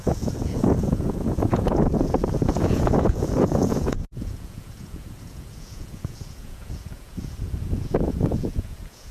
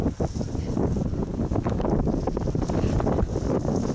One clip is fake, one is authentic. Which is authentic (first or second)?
second